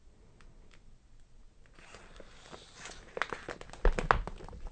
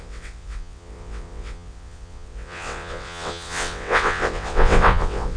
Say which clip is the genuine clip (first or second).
first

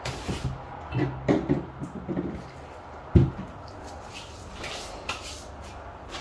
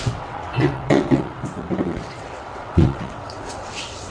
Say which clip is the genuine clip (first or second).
first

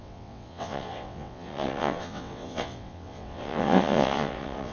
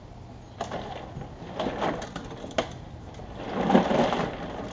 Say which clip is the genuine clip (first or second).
second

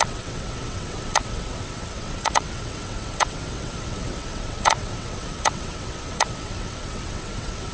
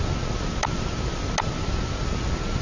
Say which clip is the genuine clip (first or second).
second